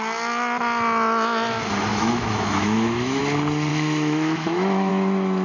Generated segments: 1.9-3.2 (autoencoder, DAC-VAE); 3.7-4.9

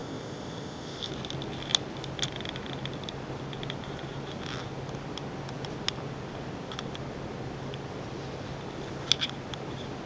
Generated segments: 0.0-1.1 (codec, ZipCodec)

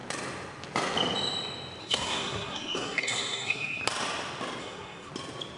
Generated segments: 1.8-3.8 (codec, SNAC); 4.6-5.1

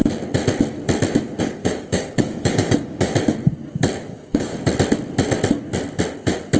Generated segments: 1.4-3.1 (codec, DAC); 4.1-4.5

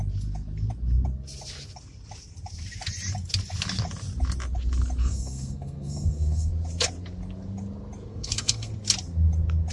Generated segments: 5.0-6.5 (codec, SNAC); 8.1-8.7

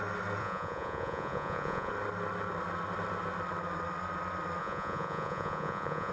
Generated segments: 0.4-1.9 (vocoder, Vocos); 4.6-6.1

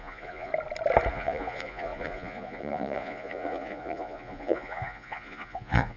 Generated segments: 0.0-0.5 (vocoder, Vocos); 1.1-6.0